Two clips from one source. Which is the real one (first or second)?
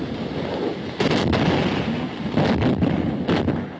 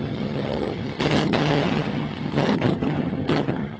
first